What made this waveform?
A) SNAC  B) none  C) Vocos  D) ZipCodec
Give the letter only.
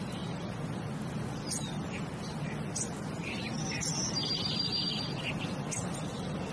B